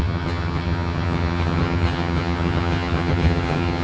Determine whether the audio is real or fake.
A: fake